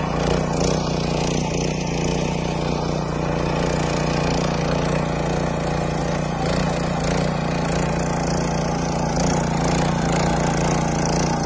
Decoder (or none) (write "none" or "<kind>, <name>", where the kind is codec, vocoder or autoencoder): none